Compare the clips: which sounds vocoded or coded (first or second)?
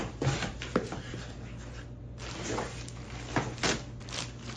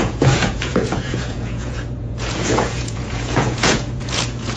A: second